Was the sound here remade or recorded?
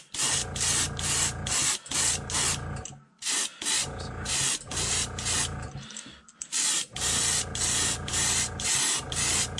recorded